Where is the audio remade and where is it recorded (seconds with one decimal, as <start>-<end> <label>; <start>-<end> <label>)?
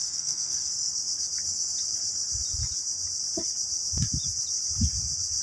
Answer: 0.0-0.7 remade; 0.7-5.4 recorded